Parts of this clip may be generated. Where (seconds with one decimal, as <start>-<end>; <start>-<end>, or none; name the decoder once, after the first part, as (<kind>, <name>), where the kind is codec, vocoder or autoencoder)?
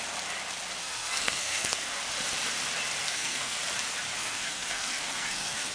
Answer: 0.8-2.0 (codec, SNAC); 3.0-3.6; 4.2-5.7